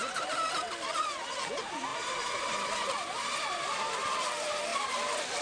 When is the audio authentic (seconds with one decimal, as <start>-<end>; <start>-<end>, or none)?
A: 0.0-5.4